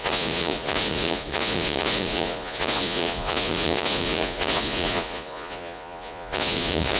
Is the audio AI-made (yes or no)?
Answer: yes